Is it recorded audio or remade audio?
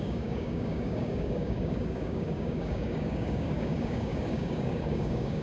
remade